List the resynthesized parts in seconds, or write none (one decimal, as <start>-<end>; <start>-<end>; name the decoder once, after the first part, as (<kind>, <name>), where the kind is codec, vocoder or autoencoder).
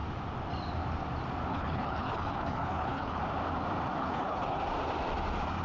1.5-3.2 (codec, HILCodec); 4.0-4.6